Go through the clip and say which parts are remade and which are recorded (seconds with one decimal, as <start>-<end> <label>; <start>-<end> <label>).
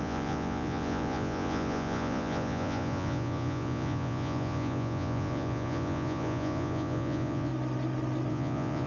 0.0-7.5 remade; 7.5-8.3 recorded; 8.3-8.9 remade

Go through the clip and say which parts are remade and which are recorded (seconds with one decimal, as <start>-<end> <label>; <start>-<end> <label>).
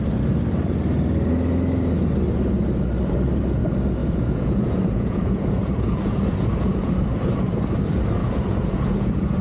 0.0-4.0 recorded; 4.0-6.9 remade; 6.9-8.2 recorded; 8.2-9.4 remade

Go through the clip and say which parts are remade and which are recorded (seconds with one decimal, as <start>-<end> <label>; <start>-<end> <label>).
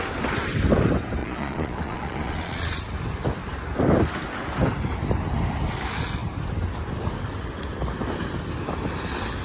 0.0-1.2 recorded; 1.2-2.8 remade; 2.8-9.4 recorded